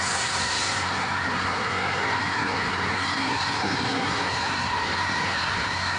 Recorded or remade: remade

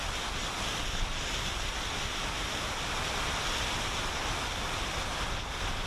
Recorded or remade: recorded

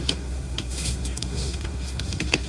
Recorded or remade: remade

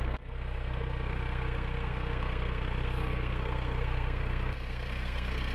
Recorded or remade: remade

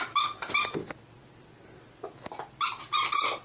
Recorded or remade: recorded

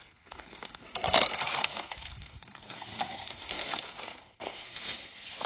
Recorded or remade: remade